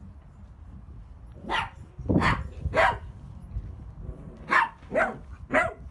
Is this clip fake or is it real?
real